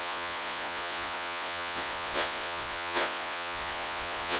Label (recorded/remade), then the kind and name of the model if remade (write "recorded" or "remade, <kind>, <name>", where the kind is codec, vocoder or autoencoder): remade, vocoder, Vocos